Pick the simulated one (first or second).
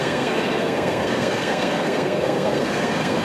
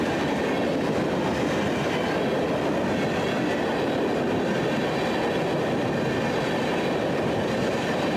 first